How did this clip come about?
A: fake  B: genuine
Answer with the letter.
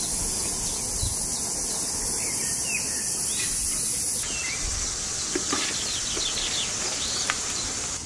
B